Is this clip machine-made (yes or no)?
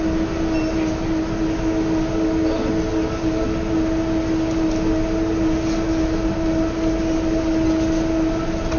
no